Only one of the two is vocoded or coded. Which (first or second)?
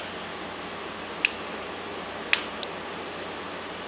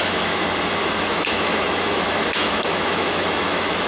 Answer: second